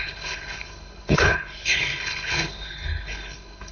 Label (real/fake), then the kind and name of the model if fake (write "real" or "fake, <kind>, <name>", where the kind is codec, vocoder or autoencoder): fake, codec, HILCodec